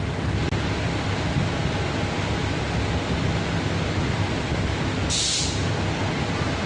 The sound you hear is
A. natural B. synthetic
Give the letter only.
A